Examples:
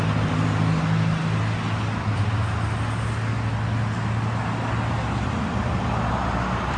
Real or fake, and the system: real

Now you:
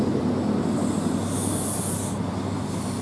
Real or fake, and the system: real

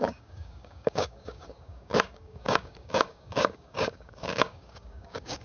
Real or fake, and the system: fake, codec, DAC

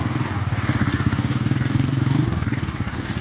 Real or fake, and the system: fake, codec, DAC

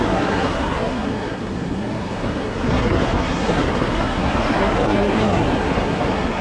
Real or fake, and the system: fake, codec, SNAC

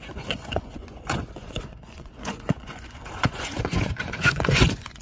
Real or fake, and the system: fake, vocoder, Vocos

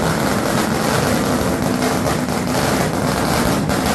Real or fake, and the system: real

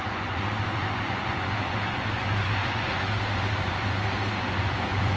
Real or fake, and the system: fake, vocoder, Vocos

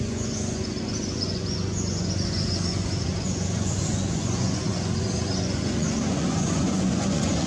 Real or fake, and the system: fake, vocoder, Vocos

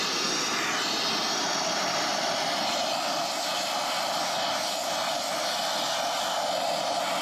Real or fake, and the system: real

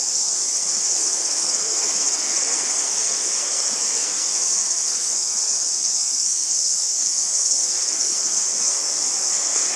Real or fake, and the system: fake, codec, SNAC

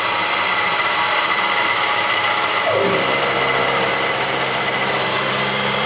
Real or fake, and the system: fake, vocoder, BigVGAN v2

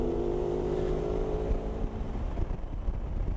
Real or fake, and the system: fake, vocoder, BigVGAN v2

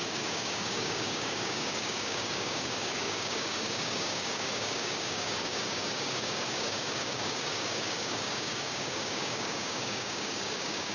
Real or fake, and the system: fake, codec, DAC